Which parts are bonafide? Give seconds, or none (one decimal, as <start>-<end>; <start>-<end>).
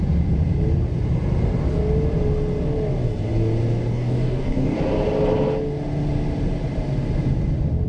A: 0.0-3.9; 4.8-7.9